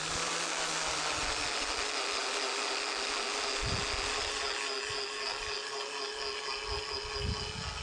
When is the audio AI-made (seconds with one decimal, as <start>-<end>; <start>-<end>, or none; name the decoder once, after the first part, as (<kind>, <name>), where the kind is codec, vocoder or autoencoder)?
none